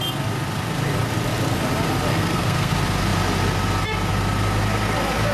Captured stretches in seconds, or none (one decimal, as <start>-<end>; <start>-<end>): 0.0-2.1; 2.7-5.3